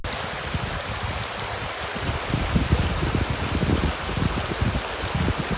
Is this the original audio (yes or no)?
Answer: yes